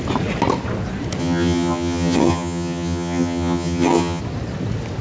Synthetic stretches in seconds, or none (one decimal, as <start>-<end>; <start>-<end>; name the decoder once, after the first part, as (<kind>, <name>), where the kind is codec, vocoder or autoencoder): 1.2-4.2 (vocoder, HiFi-GAN)